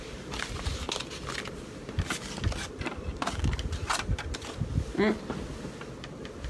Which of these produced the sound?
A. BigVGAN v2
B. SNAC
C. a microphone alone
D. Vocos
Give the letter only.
C